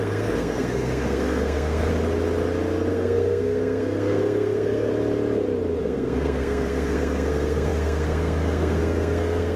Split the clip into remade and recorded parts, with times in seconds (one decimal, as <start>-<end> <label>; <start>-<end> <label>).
0.0-1.9 remade; 1.9-2.9 recorded; 2.9-4.9 remade; 4.9-5.8 recorded; 5.8-9.6 remade